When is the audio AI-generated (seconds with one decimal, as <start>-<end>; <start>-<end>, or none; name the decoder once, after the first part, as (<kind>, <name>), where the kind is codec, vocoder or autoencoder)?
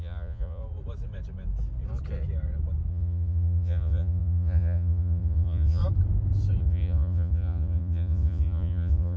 0.0-0.6 (vocoder, Vocos); 2.9-5.8; 6.6-9.2